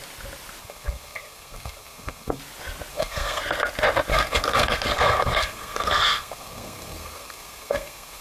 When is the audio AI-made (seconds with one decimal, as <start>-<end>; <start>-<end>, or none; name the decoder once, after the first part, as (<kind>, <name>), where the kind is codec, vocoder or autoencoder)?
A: 0.6-2.4 (codec, SNAC); 2.9-3.4; 4.1-8.2